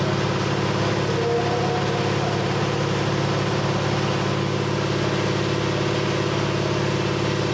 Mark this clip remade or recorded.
recorded